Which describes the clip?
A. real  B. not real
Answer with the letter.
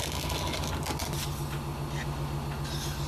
A